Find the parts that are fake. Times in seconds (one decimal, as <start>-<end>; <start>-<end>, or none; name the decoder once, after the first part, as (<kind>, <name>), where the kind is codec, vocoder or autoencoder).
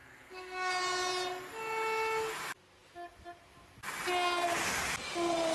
0.0-0.7 (codec, SNAC)